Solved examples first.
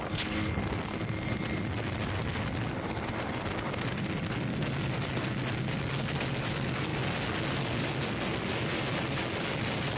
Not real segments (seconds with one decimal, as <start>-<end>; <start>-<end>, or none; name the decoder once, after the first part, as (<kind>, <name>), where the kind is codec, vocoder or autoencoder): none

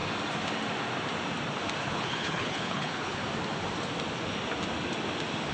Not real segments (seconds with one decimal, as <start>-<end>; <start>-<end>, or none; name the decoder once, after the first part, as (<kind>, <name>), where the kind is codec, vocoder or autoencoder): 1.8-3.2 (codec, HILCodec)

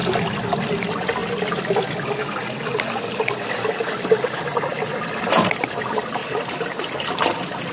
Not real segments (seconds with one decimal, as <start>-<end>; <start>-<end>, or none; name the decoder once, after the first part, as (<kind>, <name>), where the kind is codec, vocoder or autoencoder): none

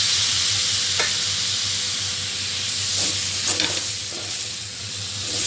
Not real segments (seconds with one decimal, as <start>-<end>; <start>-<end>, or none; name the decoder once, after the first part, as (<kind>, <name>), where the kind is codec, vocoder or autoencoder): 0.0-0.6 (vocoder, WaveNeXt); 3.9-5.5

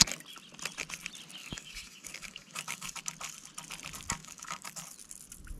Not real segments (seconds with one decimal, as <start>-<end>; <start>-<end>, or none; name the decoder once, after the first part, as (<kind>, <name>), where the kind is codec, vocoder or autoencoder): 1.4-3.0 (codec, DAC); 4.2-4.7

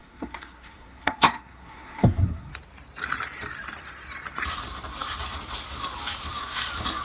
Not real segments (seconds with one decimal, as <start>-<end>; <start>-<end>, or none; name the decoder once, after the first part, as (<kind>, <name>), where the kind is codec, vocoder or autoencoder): 0.0-2.5 (codec, SNAC)

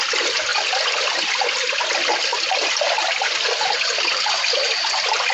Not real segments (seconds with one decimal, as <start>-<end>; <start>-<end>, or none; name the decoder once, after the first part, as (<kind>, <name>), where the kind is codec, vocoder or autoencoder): none